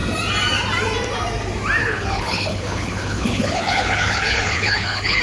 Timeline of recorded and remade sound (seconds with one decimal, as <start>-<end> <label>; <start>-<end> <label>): 0.0-1.8 recorded; 1.8-5.2 remade